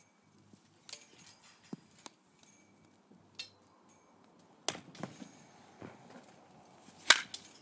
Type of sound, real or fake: real